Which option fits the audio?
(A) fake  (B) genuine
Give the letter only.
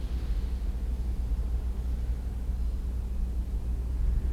B